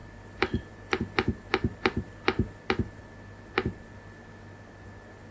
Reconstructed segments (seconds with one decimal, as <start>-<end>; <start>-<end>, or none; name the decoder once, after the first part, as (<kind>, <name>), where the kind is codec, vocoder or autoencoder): none